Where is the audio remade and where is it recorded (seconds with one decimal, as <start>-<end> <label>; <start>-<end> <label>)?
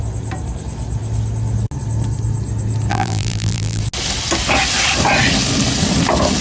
0.0-2.9 recorded; 2.9-3.8 remade; 3.8-6.4 recorded